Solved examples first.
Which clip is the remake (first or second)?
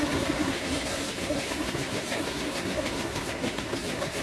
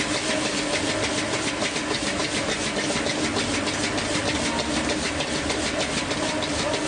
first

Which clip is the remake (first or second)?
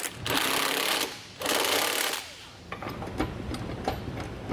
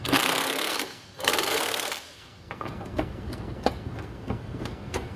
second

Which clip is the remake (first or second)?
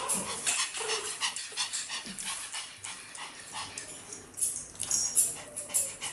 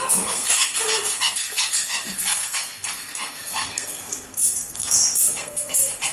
second